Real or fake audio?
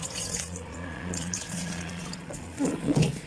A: fake